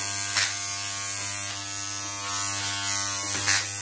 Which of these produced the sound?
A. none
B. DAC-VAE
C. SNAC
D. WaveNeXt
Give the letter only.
A